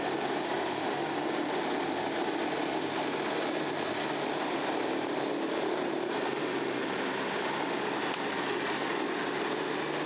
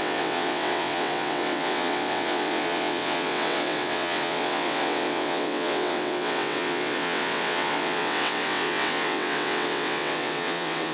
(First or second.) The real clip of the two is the first